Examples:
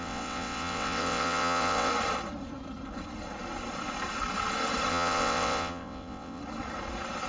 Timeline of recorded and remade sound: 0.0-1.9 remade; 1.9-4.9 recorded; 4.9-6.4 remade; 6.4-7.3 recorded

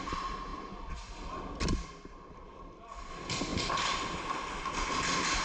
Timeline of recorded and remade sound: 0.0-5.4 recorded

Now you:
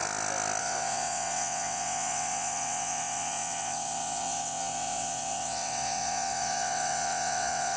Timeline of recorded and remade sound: 0.0-0.6 recorded; 0.6-7.8 remade

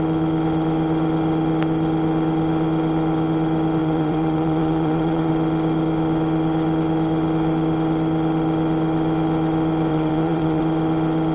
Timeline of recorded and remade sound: 0.0-3.8 recorded; 3.8-5.3 remade; 5.3-9.9 recorded; 9.9-10.6 remade; 10.6-11.3 recorded

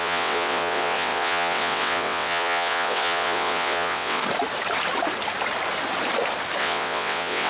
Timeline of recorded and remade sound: 0.0-4.2 remade; 4.2-6.6 recorded; 6.6-7.5 remade

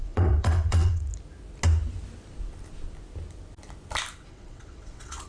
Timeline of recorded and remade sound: 0.0-1.1 remade; 1.1-4.3 recorded; 4.3-5.3 remade